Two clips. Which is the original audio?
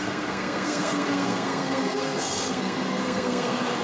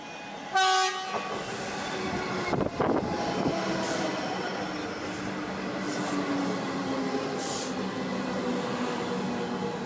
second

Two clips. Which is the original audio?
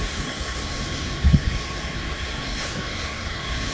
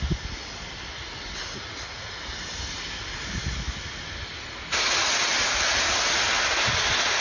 second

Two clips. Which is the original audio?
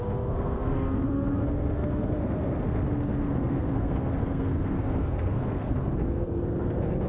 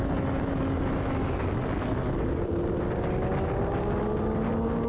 second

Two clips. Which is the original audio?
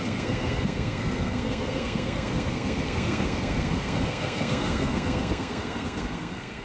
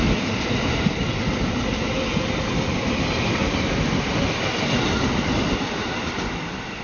second